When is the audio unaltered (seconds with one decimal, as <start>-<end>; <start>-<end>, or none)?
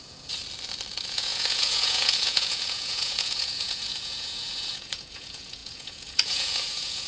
0.4-0.9